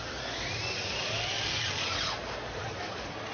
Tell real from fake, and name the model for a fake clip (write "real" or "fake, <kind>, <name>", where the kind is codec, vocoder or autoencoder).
real